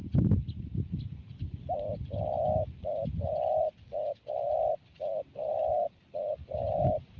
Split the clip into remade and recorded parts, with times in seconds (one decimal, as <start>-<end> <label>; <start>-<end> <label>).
0.0-7.2 recorded